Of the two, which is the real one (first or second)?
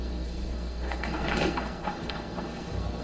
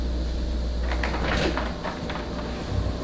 second